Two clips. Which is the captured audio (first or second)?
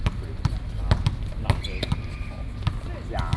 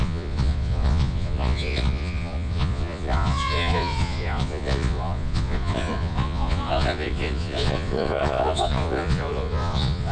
first